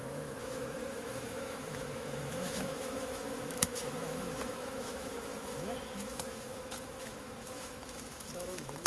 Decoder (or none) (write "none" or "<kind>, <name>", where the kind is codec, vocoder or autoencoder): autoencoder, DAC-VAE